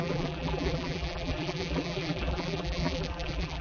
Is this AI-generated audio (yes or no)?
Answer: yes